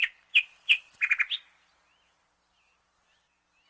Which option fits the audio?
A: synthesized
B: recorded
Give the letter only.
B